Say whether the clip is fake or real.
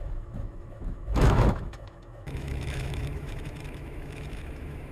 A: fake